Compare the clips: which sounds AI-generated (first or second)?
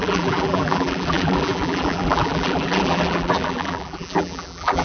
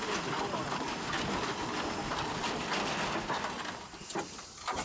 first